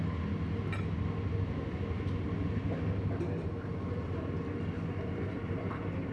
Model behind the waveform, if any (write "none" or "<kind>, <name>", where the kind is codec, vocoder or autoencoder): none